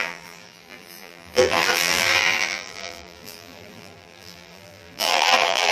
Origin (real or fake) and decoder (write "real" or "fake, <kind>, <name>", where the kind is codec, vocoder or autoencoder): fake, vocoder, BigVGAN v2